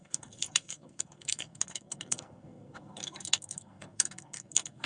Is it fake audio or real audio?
fake